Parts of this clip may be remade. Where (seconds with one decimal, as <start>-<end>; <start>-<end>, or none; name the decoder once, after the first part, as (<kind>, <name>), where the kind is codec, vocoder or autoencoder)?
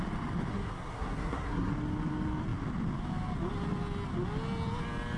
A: 0.5-1.7 (codec, SNAC)